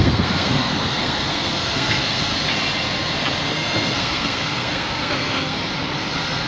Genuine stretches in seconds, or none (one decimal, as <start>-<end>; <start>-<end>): 2.3-3.5; 5.7-6.5